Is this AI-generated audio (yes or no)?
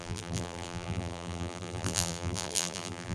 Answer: yes